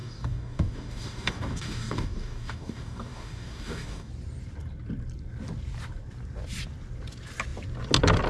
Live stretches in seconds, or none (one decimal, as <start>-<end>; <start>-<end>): 4.1-8.3